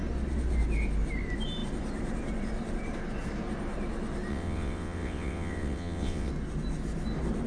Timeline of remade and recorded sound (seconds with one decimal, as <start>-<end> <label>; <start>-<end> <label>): 0.0-4.3 recorded; 4.3-6.3 remade; 6.3-7.5 recorded